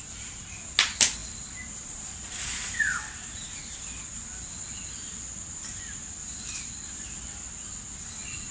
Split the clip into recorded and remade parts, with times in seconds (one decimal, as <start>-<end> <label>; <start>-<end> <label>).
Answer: 0.0-8.5 recorded